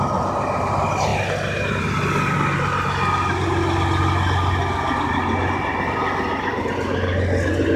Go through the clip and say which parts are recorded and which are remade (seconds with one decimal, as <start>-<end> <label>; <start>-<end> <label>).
0.0-7.8 recorded